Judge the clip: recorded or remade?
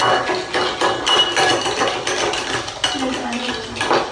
recorded